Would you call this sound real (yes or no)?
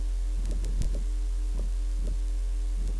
yes